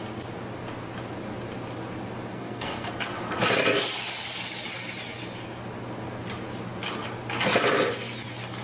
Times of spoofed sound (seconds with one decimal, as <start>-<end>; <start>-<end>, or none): 2.3-2.9